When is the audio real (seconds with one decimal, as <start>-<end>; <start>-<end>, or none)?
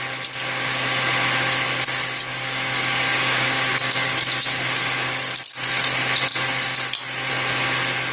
0.0-2.3; 5.4-8.1